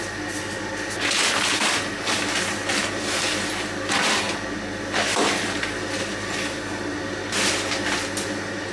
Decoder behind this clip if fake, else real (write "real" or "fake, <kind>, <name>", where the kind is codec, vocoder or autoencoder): real